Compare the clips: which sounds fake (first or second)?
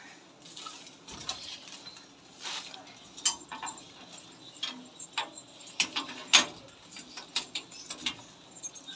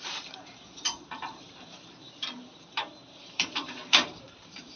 second